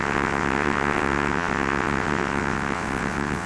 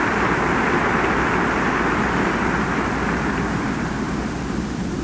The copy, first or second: first